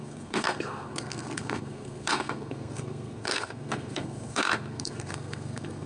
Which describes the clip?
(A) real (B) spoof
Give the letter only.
B